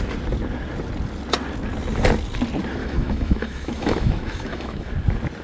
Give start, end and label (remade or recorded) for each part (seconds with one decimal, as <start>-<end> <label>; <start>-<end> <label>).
0.0-2.8 recorded; 2.8-4.9 remade; 4.9-5.4 recorded